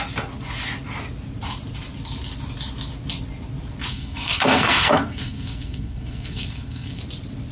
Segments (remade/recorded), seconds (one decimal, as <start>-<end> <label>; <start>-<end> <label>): 0.0-3.9 recorded; 3.9-7.0 remade; 7.0-7.5 recorded